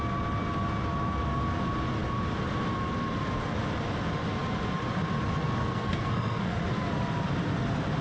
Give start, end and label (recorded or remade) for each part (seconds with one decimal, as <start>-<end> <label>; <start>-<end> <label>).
0.0-5.6 recorded; 5.6-6.6 remade; 6.6-8.0 recorded